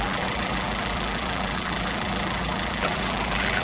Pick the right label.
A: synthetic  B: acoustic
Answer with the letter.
A